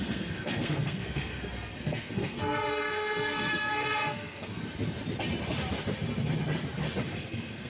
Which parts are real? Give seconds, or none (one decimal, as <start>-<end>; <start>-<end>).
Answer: 4.6-7.1